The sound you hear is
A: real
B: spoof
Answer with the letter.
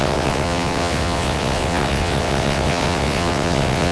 B